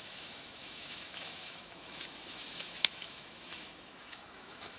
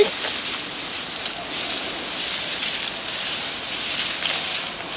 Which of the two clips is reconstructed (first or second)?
first